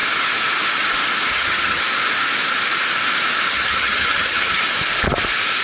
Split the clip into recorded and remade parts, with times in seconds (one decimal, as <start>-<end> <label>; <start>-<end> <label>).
0.0-1.3 recorded; 1.3-1.8 remade; 1.8-3.5 recorded; 3.5-4.6 remade; 4.6-5.6 recorded